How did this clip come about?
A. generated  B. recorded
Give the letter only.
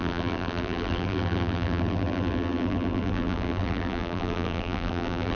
A